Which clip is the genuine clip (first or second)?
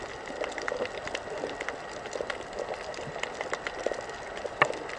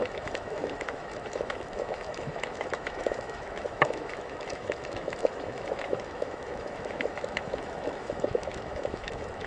first